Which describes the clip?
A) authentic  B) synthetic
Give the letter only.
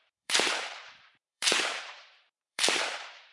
B